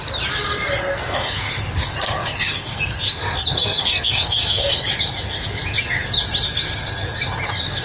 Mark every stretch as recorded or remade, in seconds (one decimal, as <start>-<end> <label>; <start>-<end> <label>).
0.0-0.9 recorded; 0.9-1.5 remade; 1.5-2.2 recorded; 2.2-2.8 remade; 2.8-3.6 recorded; 3.6-4.7 remade; 4.7-7.8 recorded